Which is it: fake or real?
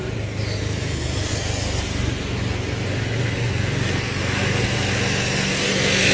real